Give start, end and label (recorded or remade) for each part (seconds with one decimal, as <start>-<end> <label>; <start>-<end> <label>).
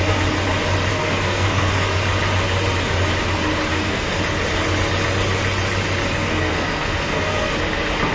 0.0-0.9 recorded; 0.9-1.7 remade; 1.7-3.7 recorded; 3.7-4.2 remade; 4.2-6.1 recorded; 6.1-7.5 remade; 7.5-8.1 recorded